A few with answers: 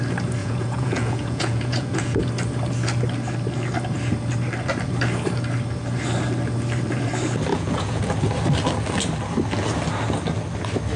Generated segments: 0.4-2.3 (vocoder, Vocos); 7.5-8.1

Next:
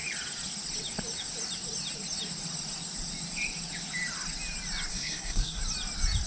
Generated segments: 4.9-5.6 (codec, SNAC)

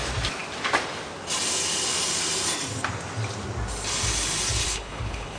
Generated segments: 4.6-5.4 (codec, HILCodec)

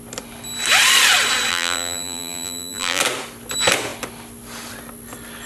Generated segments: 1.5-3.0 (vocoder, BigVGAN v2)

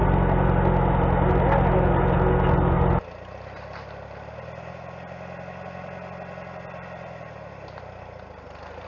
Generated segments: none